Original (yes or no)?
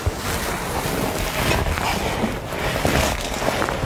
yes